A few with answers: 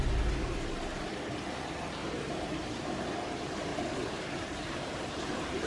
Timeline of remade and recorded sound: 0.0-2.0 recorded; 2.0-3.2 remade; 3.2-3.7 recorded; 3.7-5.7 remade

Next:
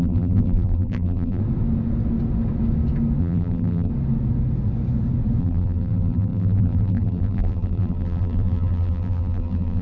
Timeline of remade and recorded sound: 0.0-1.4 remade; 1.4-3.2 recorded; 3.2-3.9 remade; 3.9-5.4 recorded; 5.4-9.8 remade

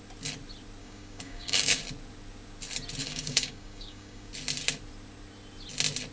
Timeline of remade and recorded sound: 0.0-0.8 recorded; 0.8-1.8 remade; 1.8-3.0 recorded; 3.0-4.3 remade; 4.3-6.1 recorded

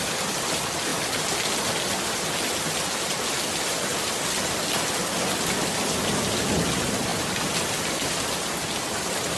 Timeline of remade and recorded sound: 0.0-9.4 recorded

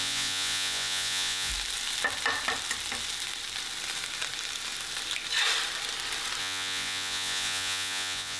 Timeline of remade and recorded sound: 0.0-1.5 remade; 1.5-6.4 recorded; 6.4-8.4 remade

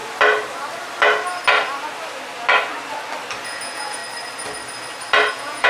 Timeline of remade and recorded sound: 0.0-3.4 recorded; 3.4-4.0 remade; 4.0-5.3 recorded; 5.3-5.7 remade